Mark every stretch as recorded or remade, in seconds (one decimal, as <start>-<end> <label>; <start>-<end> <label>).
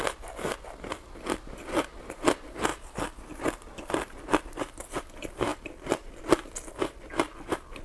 0.0-5.5 recorded; 5.5-6.2 remade; 6.2-7.8 recorded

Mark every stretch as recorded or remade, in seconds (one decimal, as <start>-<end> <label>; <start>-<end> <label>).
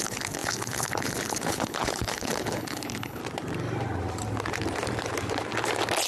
0.0-3.2 remade; 3.2-6.1 recorded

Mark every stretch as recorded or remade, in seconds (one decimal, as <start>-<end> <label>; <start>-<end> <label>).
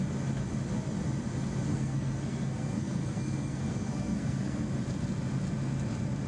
0.0-1.7 recorded; 1.7-4.7 remade; 4.7-6.3 recorded